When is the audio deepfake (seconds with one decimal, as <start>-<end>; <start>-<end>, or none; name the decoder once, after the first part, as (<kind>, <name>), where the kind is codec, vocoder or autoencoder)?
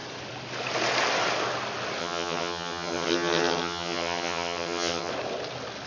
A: 2.0-5.1 (vocoder, HiFi-GAN)